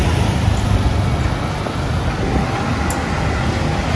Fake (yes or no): no